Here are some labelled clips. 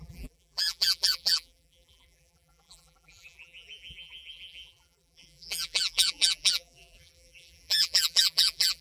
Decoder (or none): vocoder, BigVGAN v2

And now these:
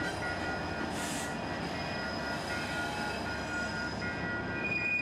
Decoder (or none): none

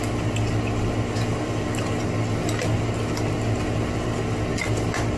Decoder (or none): none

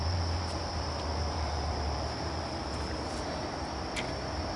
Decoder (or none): vocoder, BigVGAN v2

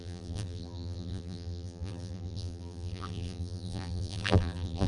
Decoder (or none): vocoder, BigVGAN v2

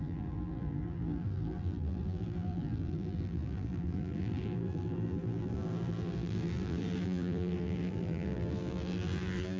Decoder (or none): vocoder, BigVGAN v2